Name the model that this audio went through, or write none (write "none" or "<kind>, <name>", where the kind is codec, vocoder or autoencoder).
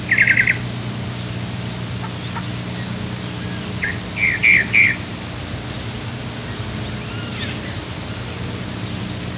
none